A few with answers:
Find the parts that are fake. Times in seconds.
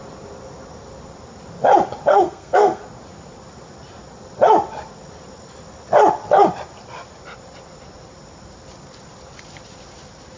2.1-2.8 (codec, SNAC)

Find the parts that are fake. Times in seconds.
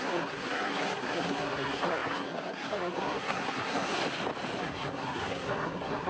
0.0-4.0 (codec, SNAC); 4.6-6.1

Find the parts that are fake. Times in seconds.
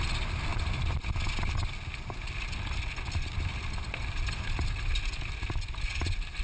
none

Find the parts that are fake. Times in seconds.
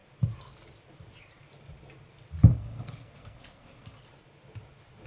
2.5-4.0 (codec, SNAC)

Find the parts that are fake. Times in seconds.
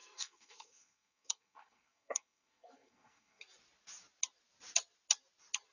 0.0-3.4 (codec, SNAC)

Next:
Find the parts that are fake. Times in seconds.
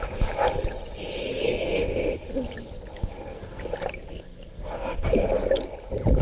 1.3-1.8 (codec, SNAC); 3.0-3.6; 4.1-5.3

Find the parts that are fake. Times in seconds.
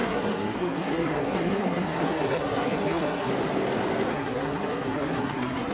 0.0-3.3 (codec, SNAC); 4.1-5.7